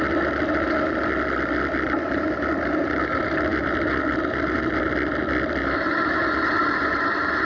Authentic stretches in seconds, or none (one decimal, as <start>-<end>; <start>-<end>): 0.0-3.5; 6.0-7.4

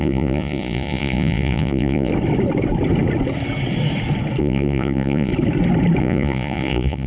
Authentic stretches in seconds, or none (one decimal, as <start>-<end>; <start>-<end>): 2.1-4.4; 5.3-6.0